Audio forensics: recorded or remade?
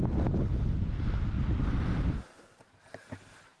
recorded